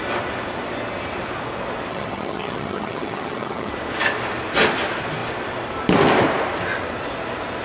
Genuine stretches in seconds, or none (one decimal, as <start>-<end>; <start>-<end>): 0.0-1.9; 3.7-7.6